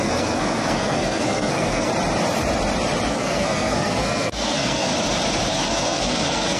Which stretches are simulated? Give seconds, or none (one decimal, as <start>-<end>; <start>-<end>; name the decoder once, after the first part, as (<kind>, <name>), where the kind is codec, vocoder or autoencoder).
0.0-1.9 (codec, SNAC); 3.1-4.9; 5.5-6.6